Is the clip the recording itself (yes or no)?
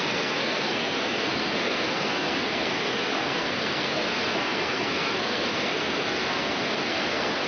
no